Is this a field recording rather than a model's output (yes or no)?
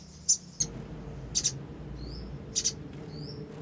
yes